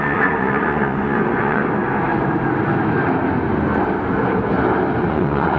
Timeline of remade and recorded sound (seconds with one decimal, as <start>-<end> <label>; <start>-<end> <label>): 0.0-1.6 remade; 1.6-5.0 recorded; 5.0-5.6 remade